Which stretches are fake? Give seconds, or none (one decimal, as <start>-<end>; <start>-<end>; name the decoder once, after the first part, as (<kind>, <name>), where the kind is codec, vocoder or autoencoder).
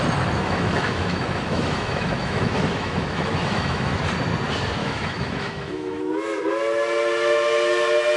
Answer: 0.4-4.0 (autoencoder, DAC-VAE); 4.8-6.1